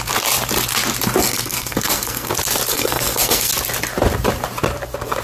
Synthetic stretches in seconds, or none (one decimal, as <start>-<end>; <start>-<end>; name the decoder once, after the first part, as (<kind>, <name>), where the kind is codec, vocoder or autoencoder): 1.2-2.3 (codec, SNAC); 2.7-3.5